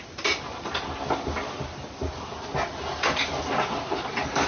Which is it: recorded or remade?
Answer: recorded